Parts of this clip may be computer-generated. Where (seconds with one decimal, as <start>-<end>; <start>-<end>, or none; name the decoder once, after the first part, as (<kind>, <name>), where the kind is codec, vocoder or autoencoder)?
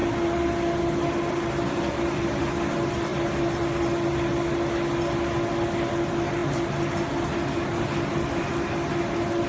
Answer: none